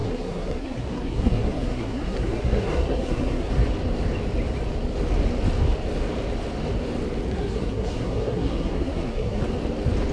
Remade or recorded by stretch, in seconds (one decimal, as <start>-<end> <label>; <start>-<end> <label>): 0.0-3.5 remade; 3.5-7.3 recorded; 7.3-9.4 remade; 9.4-10.1 recorded